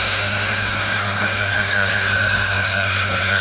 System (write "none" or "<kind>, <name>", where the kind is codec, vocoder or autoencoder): codec, SNAC